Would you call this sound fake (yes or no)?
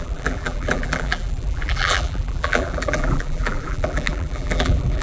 yes